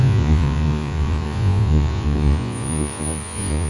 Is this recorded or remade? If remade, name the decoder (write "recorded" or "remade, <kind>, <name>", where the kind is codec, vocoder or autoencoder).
remade, vocoder, Vocos